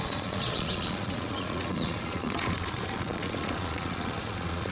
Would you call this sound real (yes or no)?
no